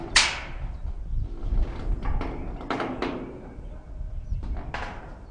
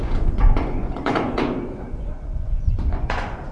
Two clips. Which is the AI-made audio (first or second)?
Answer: second